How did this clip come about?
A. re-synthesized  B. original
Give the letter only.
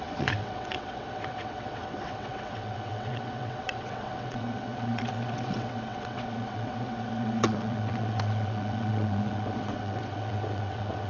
A